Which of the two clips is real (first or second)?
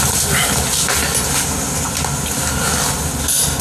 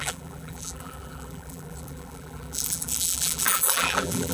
first